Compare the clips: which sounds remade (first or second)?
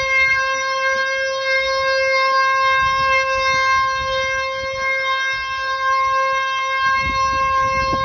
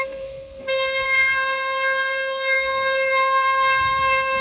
second